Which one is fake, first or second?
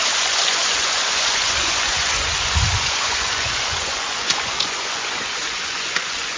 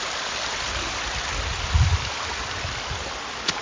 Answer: first